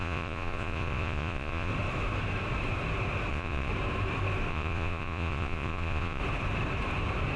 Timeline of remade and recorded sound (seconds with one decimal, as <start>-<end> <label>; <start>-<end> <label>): 0.0-1.7 remade; 1.7-3.3 recorded; 3.3-3.7 remade; 3.7-4.5 recorded; 4.5-6.2 remade; 6.2-7.4 recorded